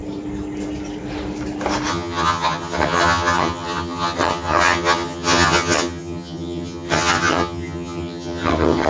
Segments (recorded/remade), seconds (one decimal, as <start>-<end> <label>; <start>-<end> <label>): 0.0-1.9 recorded; 1.9-8.9 remade